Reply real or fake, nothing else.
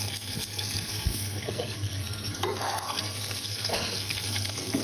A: fake